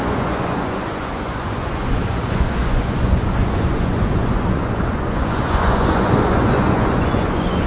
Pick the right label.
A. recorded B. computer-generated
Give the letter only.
B